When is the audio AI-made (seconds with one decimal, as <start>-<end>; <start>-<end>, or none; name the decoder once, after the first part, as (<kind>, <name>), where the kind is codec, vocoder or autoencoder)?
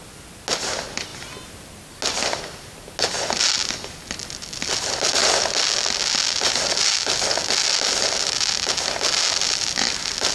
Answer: none